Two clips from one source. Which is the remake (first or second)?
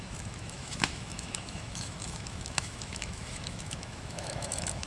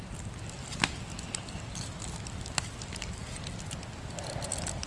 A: first